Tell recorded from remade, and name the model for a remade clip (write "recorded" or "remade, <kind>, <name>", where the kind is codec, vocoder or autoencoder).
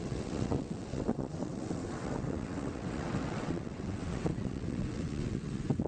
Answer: remade, vocoder, WaveNeXt